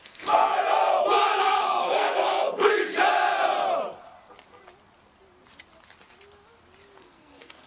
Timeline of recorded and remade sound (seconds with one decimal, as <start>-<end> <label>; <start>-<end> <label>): 0.0-0.5 remade; 0.5-1.4 recorded; 1.4-2.8 remade; 2.8-7.0 recorded; 7.0-7.7 remade